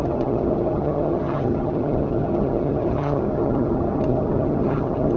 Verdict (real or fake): fake